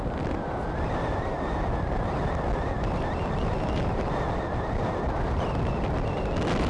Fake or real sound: real